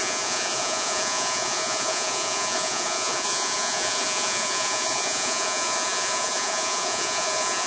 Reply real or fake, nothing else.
fake